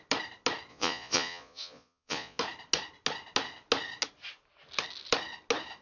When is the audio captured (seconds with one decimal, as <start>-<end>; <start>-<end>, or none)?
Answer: 0.0-0.7; 2.4-5.8